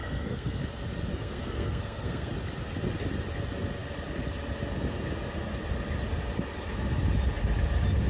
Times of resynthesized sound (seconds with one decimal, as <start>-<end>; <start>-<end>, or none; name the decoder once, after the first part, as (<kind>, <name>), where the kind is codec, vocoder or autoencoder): 0.0-0.6 (codec, SNAC); 1.1-2.3